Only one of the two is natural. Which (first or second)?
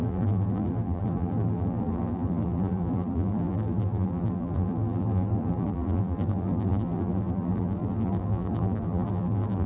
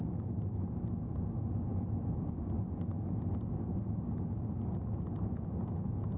second